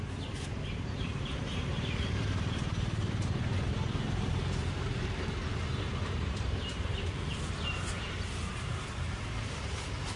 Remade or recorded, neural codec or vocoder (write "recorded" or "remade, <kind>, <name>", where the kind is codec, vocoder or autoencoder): remade, vocoder, BigVGAN v2